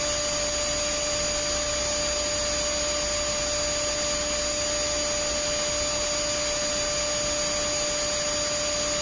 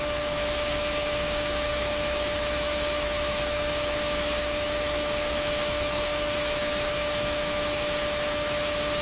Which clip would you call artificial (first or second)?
second